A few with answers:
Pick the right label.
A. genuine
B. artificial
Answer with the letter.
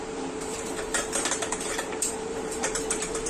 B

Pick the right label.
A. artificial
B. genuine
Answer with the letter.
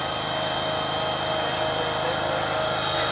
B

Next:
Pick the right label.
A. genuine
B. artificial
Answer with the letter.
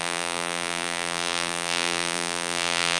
B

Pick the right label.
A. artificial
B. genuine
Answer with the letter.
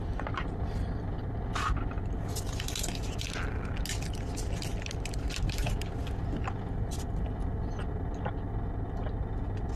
B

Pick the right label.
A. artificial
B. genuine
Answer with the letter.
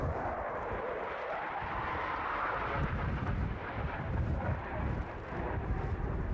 A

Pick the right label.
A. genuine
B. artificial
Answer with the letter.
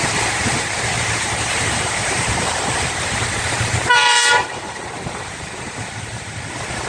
B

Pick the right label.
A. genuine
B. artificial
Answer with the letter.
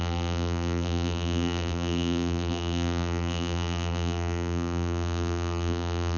B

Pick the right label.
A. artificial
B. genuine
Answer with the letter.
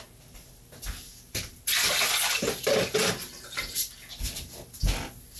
B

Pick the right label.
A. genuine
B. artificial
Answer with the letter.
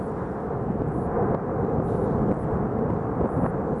A